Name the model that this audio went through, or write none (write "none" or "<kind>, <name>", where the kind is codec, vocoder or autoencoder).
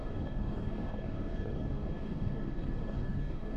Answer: codec, DAC